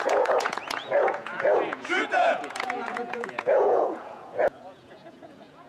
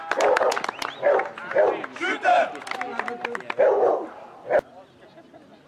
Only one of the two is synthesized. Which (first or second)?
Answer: first